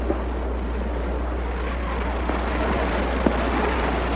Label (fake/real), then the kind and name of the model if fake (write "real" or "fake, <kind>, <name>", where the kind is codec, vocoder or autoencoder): real